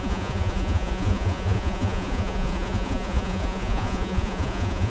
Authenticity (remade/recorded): remade